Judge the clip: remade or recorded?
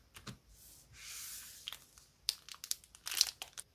recorded